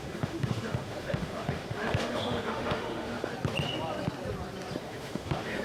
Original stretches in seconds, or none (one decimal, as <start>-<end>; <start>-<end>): 3.3-4.8